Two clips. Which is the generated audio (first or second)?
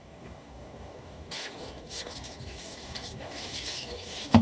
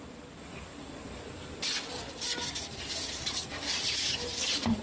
first